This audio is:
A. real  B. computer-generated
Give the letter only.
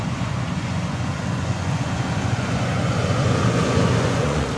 B